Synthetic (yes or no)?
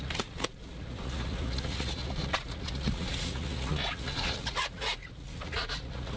yes